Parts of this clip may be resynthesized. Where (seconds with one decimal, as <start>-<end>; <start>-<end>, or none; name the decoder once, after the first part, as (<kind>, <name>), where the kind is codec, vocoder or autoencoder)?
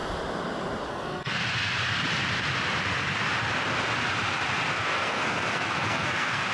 0.9-1.4 (codec, SNAC); 4.7-6.5